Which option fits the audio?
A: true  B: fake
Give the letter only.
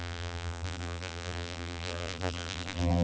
B